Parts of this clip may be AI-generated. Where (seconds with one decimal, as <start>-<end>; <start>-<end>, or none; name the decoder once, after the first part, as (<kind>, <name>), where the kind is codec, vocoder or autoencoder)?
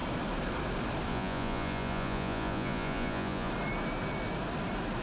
1.1-3.5 (vocoder, Vocos)